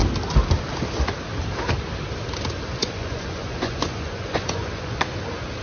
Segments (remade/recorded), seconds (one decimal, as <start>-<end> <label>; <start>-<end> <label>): 0.0-2.8 recorded; 2.8-5.0 remade; 5.0-5.6 recorded